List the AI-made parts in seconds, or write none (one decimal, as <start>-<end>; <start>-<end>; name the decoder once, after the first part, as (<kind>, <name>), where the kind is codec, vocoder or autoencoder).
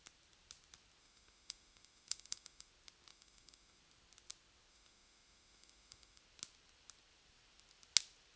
1.0-2.7 (autoencoder, DAC-VAE); 3.1-3.8; 4.7-6.2